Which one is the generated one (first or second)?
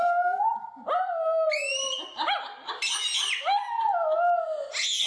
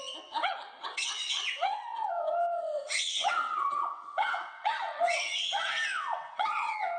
second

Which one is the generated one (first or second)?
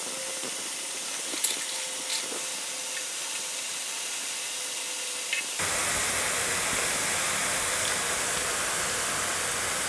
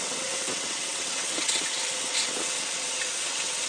second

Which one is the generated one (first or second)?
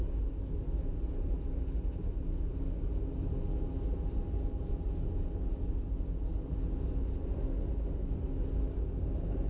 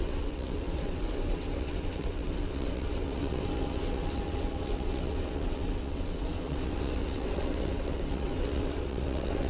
second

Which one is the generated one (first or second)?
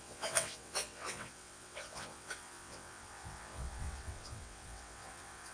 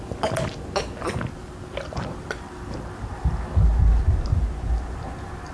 first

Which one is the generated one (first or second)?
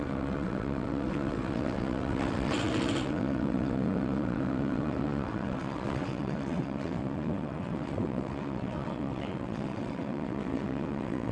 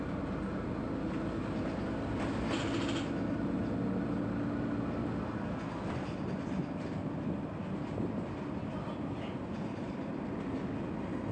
first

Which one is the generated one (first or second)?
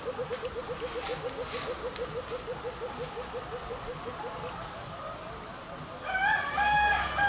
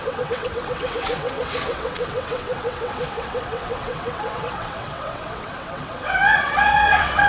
second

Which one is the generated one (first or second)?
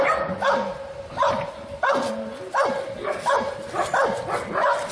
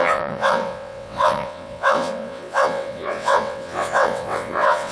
second